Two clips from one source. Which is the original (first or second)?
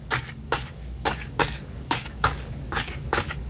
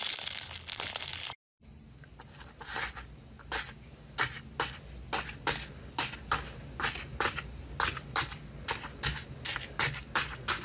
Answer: second